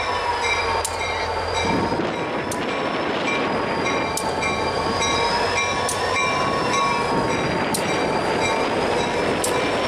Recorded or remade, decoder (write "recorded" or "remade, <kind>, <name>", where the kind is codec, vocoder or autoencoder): recorded